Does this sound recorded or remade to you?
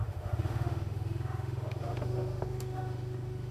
remade